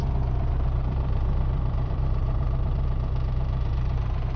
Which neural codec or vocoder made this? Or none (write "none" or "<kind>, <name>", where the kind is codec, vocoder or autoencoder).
vocoder, BigVGAN v2